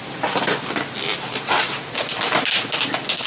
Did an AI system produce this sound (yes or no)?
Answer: no